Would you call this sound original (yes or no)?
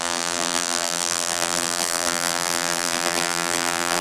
no